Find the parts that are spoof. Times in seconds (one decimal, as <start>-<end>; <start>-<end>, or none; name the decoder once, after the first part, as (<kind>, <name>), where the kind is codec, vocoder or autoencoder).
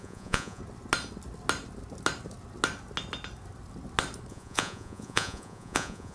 0.0-0.6 (vocoder, Vocos); 4.3-6.1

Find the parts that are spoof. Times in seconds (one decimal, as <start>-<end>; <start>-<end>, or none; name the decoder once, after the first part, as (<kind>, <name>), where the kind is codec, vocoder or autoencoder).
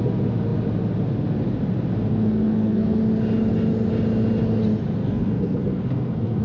2.1-3.0 (codec, SNAC); 5.0-6.4